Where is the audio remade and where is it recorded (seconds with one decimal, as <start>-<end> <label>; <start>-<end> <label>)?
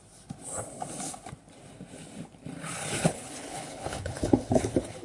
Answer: 0.0-3.0 recorded; 3.0-5.0 remade